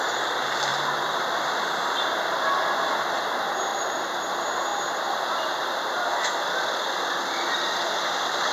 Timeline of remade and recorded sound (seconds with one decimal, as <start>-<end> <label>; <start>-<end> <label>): 0.0-3.7 recorded; 3.7-4.2 remade; 4.2-4.7 recorded; 4.7-6.4 remade; 6.4-8.5 recorded